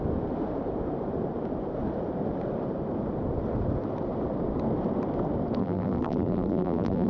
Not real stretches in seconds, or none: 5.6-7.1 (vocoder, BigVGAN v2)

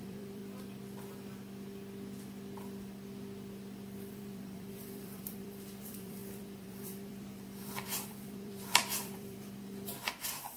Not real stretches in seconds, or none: 0.0-0.4 (vocoder, BigVGAN v2); 4.1-10.6

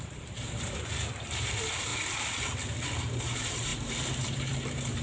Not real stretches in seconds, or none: 0.0-1.9 (vocoder, BigVGAN v2); 3.2-5.0